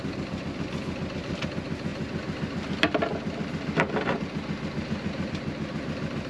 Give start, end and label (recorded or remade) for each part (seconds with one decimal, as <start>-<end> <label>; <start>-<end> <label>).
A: 0.0-6.3 recorded